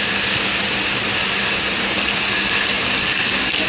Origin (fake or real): real